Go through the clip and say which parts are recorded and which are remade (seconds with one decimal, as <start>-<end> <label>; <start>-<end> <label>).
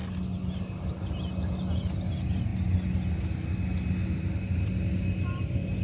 0.0-5.8 recorded